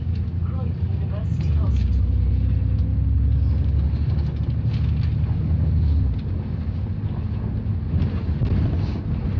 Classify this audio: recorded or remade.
recorded